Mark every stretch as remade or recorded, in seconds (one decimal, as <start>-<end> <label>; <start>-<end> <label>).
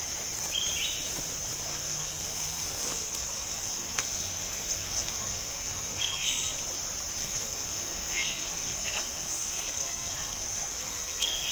0.0-1.7 recorded; 1.7-6.6 remade; 6.6-7.2 recorded; 7.2-11.5 remade